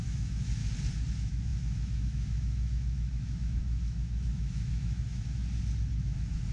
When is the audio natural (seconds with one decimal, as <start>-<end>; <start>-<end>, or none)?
0.6-1.1; 5.4-6.0